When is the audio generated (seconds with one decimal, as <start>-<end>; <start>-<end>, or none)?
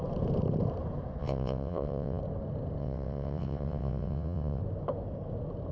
1.2-2.2; 2.8-4.6